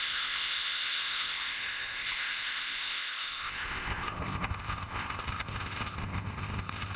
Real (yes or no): no